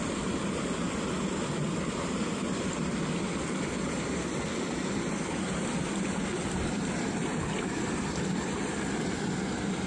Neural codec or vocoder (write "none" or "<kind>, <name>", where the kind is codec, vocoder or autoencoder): none